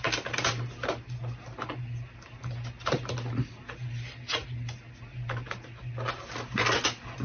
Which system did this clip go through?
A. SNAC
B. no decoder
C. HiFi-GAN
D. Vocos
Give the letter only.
B